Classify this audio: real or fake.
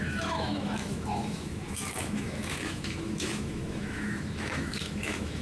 fake